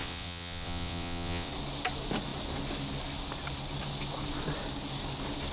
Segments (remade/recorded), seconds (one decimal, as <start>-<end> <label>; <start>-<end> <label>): 0.0-1.5 remade; 1.5-5.5 recorded